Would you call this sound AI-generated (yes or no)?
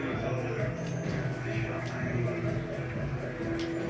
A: no